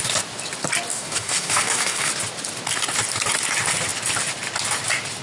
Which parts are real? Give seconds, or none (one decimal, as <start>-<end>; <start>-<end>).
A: 0.0-0.9; 2.1-5.2